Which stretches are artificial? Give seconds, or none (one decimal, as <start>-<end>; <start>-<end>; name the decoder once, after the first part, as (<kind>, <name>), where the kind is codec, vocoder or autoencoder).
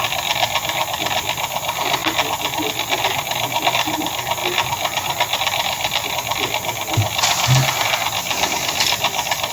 none